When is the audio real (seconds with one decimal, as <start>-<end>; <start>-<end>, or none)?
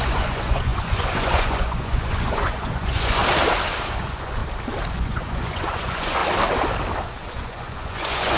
3.2-3.9; 4.4-4.9; 6.2-7.3